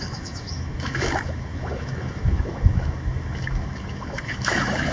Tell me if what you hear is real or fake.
fake